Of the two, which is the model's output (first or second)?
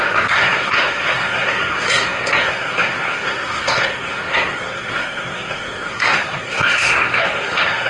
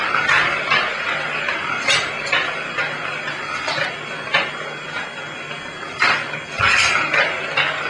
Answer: first